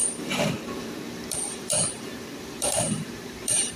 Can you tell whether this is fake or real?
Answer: fake